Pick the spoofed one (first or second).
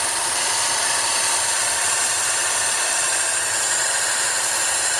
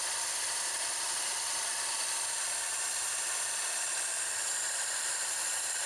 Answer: second